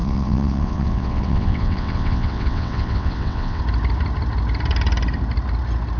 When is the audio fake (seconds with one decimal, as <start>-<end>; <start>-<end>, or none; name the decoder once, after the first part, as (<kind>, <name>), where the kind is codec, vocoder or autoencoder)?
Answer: 0.0-3.6 (vocoder, WaveNeXt)